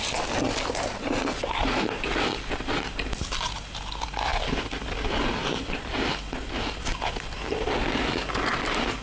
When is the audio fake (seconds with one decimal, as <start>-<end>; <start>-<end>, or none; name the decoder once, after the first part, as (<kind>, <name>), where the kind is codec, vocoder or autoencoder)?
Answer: none